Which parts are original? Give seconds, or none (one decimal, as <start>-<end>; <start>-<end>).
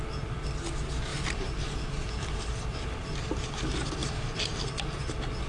0.0-1.1; 3.4-4.0; 4.6-5.5